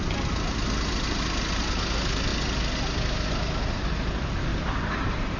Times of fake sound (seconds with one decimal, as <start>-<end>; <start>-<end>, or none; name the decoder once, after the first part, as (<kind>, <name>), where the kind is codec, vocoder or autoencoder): 4.5-5.4 (vocoder, BigVGAN v2)